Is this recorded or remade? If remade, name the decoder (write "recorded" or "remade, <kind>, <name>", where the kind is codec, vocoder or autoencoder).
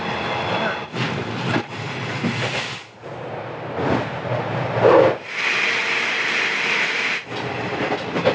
recorded